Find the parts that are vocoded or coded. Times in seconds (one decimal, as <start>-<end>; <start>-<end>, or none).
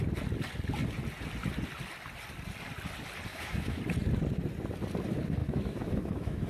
3.3-3.8; 5.4-6.5